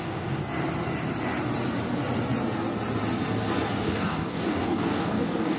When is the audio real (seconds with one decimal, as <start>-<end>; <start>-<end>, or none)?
0.4-3.8